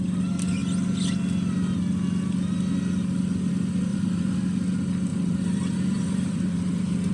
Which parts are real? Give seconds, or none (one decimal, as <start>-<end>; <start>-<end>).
0.0-3.9; 4.4-5.1